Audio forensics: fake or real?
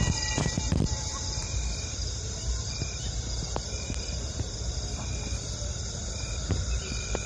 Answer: fake